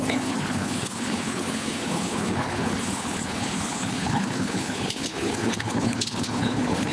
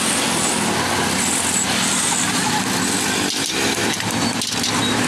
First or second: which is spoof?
first